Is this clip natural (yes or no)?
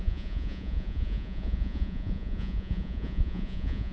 no